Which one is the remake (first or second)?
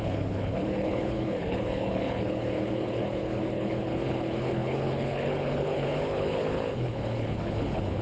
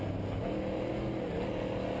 first